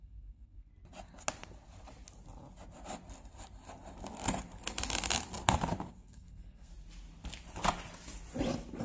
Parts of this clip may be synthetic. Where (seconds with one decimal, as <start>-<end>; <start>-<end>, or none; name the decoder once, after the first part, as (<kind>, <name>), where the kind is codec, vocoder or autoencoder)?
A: 0.0-0.7 (codec, SNAC); 5.9-6.7